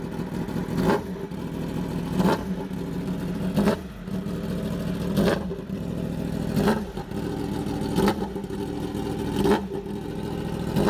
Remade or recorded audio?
recorded